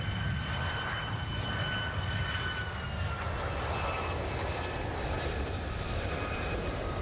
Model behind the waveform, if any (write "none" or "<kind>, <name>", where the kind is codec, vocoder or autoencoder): none